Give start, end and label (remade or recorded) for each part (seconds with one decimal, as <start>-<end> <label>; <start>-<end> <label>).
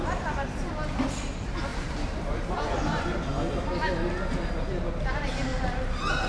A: 0.0-1.7 recorded; 1.7-3.3 remade; 3.3-6.3 recorded